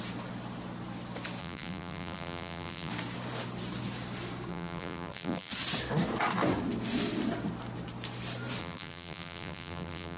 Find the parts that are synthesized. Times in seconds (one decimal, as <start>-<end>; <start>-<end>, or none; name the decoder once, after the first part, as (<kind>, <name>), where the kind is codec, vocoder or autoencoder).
1.4-2.9 (vocoder, BigVGAN v2); 4.5-5.5; 8.6-10.2